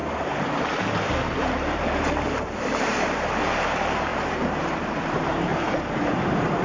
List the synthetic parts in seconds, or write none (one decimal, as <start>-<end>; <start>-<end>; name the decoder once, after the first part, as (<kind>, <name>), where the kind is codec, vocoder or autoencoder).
0.0-6.6 (vocoder, BigVGAN v2)